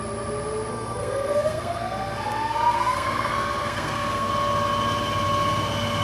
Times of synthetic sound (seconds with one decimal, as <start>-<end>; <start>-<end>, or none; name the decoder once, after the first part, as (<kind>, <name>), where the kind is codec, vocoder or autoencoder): 0.7-4.3 (codec, SNAC)

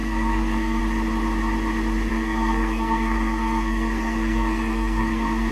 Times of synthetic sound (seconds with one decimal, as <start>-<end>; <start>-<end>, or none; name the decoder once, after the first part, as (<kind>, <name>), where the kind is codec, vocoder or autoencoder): 0.0-0.8 (codec, SNAC); 2.1-5.5

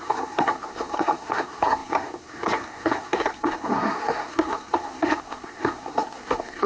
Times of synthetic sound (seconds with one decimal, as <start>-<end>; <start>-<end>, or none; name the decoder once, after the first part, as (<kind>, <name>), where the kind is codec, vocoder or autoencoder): 0.0-6.7 (codec, SNAC)

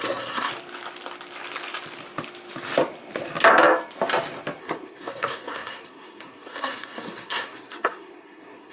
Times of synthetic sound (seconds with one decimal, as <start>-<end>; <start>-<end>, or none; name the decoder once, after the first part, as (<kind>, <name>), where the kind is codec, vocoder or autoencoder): 0.0-0.5 (codec, SNAC); 4.6-8.7

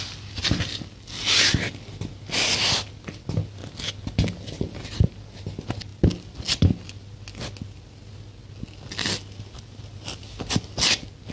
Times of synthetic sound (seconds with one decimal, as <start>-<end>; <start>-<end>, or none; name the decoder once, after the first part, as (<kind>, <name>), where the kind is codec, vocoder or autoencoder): none

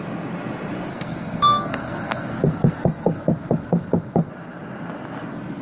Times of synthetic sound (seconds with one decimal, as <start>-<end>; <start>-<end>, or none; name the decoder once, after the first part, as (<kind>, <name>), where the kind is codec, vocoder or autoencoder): 0.9-4.3 (codec, SNAC)